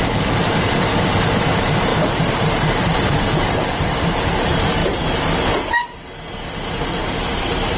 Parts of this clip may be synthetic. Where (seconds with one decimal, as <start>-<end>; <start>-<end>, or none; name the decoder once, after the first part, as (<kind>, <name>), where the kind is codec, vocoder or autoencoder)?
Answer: 0.0-4.8 (vocoder, BigVGAN v2); 7.2-7.8